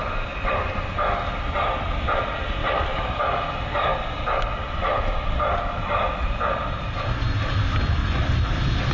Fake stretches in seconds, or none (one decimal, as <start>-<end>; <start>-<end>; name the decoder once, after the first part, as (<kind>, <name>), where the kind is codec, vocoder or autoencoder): 0.4-1.1 (vocoder, BigVGAN v2); 2.6-3.2; 3.9-5.5; 8.0-8.9